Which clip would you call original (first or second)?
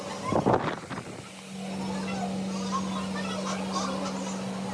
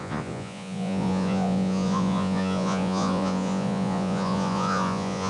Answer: first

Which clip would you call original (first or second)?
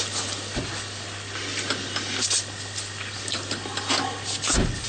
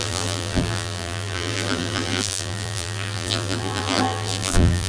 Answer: first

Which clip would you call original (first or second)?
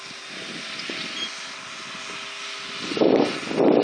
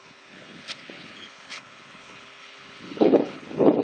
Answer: first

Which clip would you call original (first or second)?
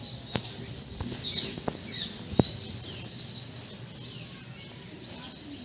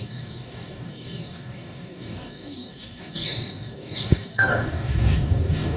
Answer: first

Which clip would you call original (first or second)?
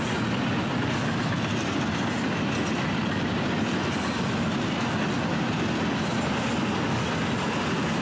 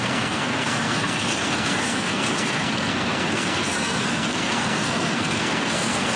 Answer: first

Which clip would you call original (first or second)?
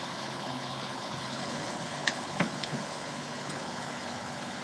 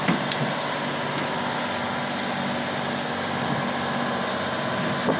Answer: second